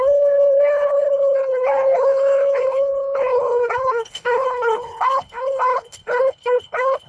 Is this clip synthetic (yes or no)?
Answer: yes